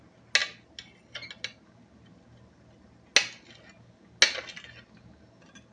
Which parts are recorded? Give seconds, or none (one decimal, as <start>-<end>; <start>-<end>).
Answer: 0.0-5.7